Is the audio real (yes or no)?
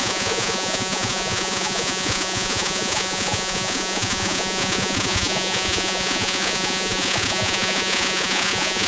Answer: no